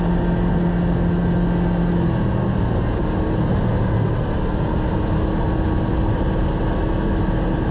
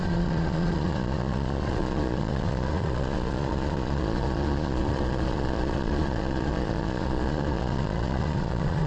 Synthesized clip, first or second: second